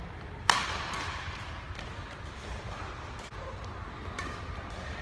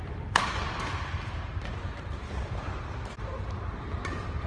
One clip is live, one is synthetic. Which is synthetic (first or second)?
second